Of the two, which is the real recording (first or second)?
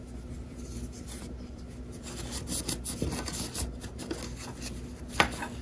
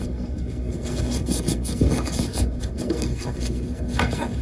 first